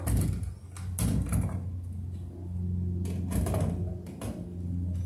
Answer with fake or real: real